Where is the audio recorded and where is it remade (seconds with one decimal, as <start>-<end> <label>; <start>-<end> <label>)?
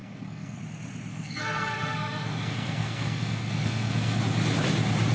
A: 0.0-0.6 remade; 0.6-1.1 recorded; 1.1-4.2 remade; 4.2-5.1 recorded